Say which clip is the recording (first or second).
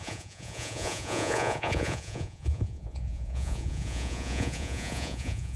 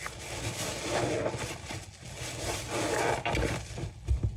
second